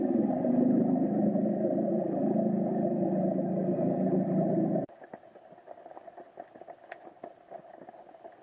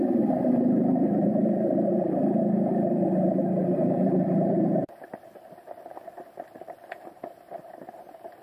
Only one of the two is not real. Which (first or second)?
second